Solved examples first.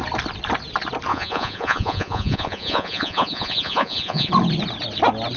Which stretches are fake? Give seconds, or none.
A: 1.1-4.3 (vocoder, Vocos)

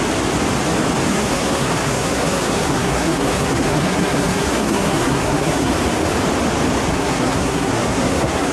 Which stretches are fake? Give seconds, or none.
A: 1.1-5.7 (codec, SNAC); 6.9-8.5